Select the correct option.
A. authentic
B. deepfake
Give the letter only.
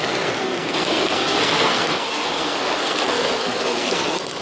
B